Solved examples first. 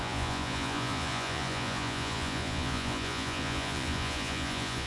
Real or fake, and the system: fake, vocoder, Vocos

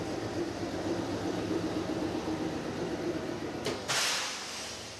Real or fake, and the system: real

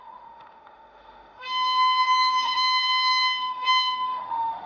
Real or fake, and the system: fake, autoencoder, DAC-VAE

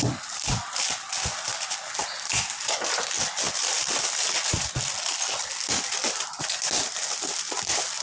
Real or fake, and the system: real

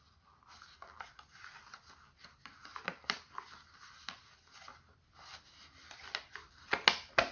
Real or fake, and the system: real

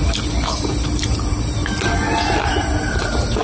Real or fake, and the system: real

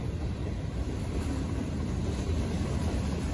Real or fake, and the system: fake, vocoder, BigVGAN v2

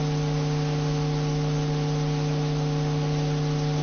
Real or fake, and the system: real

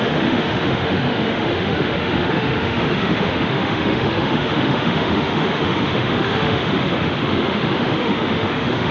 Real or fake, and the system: fake, autoencoder, DAC-VAE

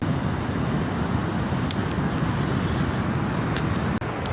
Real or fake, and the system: real